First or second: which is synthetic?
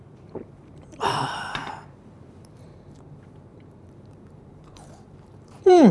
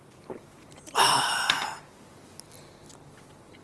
first